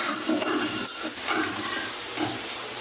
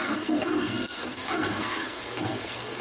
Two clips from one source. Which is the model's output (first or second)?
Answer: second